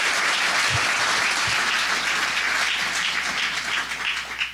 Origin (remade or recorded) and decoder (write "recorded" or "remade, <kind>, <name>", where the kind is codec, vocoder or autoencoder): recorded